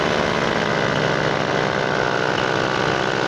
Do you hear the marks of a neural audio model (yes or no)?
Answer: no